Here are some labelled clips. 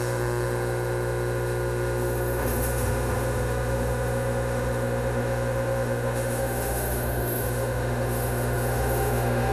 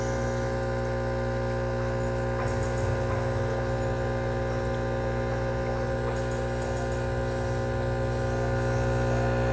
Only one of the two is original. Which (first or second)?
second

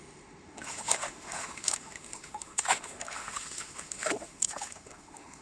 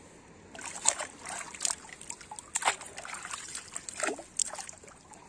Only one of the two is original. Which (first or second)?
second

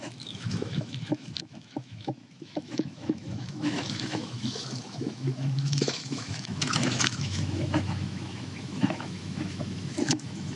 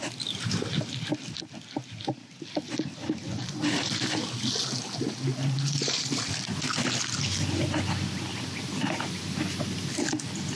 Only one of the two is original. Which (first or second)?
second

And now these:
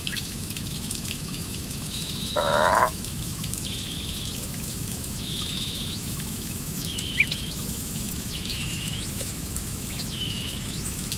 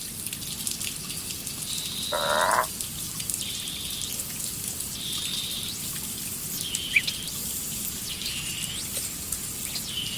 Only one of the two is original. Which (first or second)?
second